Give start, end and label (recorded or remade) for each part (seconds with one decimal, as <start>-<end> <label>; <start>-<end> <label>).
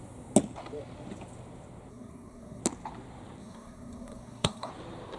0.0-1.9 recorded; 1.9-2.6 remade; 2.6-3.4 recorded; 3.4-4.7 remade; 4.7-5.2 recorded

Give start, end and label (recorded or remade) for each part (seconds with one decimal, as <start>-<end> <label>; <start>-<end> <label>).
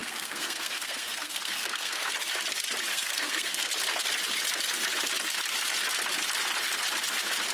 0.0-2.1 remade; 2.1-2.9 recorded; 2.9-3.7 remade; 3.7-7.5 recorded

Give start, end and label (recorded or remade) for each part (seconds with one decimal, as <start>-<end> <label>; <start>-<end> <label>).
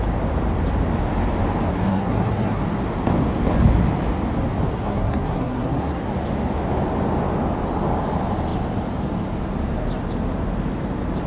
0.0-1.7 recorded; 1.7-2.6 remade; 2.6-4.7 recorded; 4.7-6.1 remade; 6.1-11.3 recorded